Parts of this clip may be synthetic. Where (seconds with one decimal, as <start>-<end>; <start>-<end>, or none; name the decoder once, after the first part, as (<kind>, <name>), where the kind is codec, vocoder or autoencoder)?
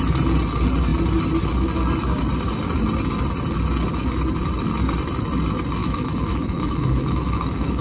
5.8-7.8 (autoencoder, DAC-VAE)